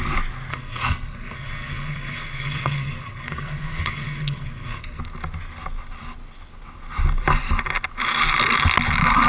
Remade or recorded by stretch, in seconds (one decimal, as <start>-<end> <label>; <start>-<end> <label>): 0.0-0.5 recorded; 0.5-5.0 remade; 5.0-9.3 recorded